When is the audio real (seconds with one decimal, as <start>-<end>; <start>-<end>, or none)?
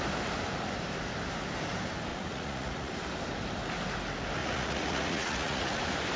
0.0-2.1; 2.9-4.4; 5.8-6.2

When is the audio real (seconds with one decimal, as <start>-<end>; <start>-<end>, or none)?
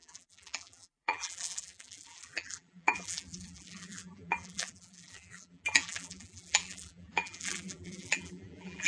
none